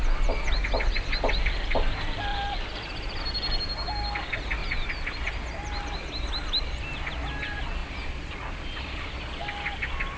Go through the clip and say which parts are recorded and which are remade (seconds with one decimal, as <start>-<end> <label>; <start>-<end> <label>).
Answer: 0.0-2.3 recorded; 2.3-3.2 remade; 3.2-4.6 recorded; 4.6-5.5 remade; 5.5-7.8 recorded; 7.8-9.2 remade; 9.2-10.2 recorded

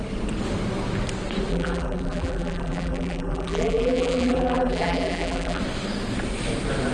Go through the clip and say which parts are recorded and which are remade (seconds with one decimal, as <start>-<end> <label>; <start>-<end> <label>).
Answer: 0.0-1.5 recorded; 1.5-5.6 remade; 5.6-6.9 recorded

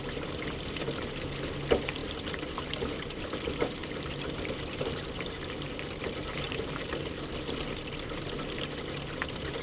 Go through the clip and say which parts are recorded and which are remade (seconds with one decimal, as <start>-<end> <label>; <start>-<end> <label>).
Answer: 0.0-3.8 recorded; 3.8-6.9 remade; 6.9-9.6 recorded